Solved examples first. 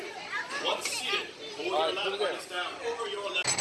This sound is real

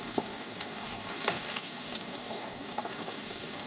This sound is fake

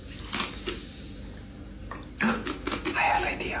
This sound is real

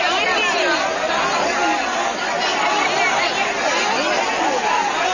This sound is real